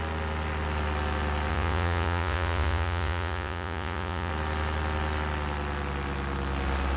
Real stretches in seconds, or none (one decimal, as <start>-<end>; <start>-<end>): 0.0-1.5; 4.3-7.0